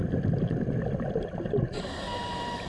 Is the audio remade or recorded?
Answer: recorded